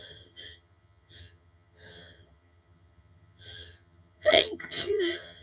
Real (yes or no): no